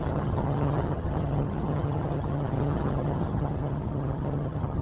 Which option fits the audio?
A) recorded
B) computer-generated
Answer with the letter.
B